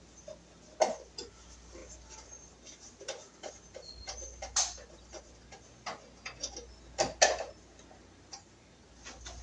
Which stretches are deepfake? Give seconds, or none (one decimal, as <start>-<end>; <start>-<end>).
none